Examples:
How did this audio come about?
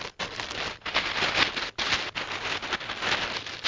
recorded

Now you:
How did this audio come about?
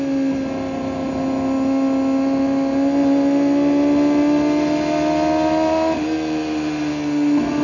recorded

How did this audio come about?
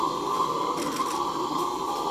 recorded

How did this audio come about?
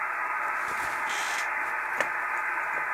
recorded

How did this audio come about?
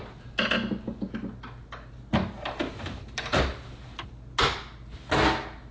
recorded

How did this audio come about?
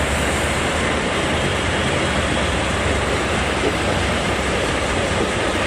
remade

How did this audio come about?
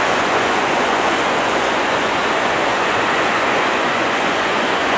remade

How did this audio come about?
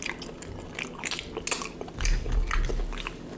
recorded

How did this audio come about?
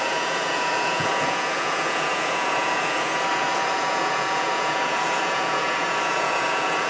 remade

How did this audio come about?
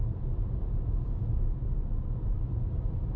recorded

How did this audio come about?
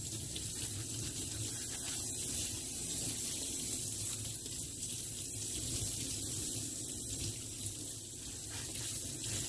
recorded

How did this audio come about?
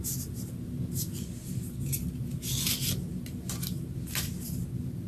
recorded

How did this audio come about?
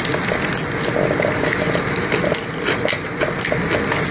recorded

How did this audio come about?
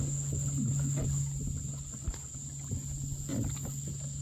recorded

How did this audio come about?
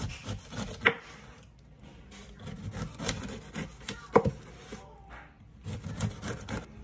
recorded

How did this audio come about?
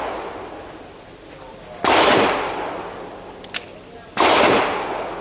recorded